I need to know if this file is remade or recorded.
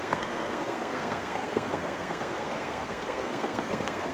remade